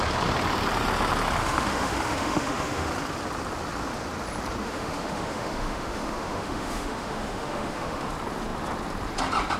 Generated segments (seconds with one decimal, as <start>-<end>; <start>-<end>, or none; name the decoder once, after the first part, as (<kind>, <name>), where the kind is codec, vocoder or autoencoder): 1.4-2.9 (autoencoder, DAC-VAE); 4.6-8.1